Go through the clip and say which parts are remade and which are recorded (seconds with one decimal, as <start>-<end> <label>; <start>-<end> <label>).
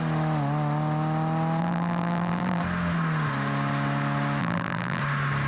0.0-1.6 recorded; 1.6-2.6 remade; 2.6-4.4 recorded; 4.4-5.0 remade; 5.0-5.5 recorded